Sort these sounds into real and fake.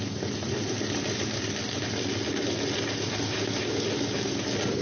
real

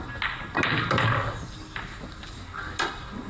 real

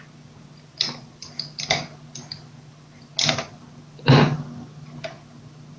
real